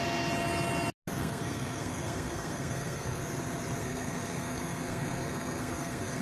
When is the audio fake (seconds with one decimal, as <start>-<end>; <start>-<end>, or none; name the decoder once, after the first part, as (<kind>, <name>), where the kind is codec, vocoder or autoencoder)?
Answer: 1.2-3.2 (codec, SNAC); 3.8-6.2

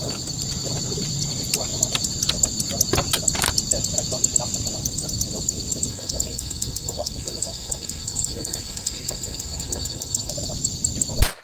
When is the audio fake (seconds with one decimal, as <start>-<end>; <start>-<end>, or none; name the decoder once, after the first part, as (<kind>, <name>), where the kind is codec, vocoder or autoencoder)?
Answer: 5.9-10.3 (codec, SNAC)

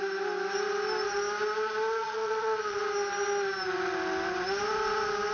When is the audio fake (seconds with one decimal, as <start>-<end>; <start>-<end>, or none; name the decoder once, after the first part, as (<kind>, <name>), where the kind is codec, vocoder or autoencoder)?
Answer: 2.0-2.8 (vocoder, Vocos)

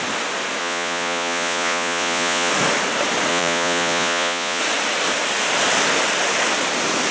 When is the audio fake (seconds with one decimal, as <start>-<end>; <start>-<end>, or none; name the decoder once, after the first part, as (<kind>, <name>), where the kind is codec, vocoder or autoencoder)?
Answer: 0.6-2.5 (vocoder, Vocos); 3.3-4.6